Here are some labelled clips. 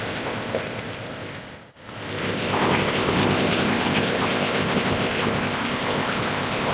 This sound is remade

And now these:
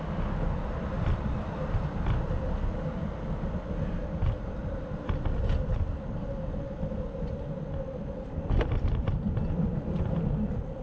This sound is recorded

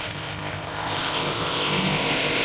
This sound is remade